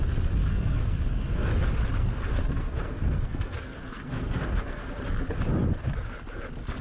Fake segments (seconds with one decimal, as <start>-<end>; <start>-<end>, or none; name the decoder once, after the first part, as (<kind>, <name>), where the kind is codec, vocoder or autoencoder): 0.4-1.5 (codec, SNAC); 2.0-4.9